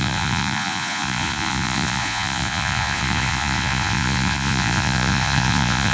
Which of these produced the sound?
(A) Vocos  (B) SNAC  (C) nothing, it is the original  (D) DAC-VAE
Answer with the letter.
A